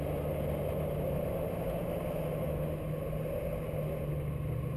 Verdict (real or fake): real